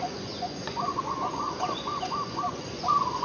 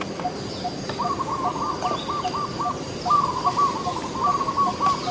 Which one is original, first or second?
second